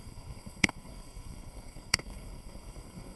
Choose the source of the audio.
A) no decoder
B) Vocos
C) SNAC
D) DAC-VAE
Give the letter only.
C